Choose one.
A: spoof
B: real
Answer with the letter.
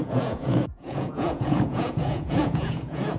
A